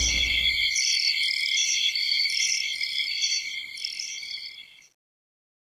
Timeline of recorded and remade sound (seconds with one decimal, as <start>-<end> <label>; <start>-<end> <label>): 0.0-1.6 recorded; 1.6-3.7 remade; 3.7-5.6 recorded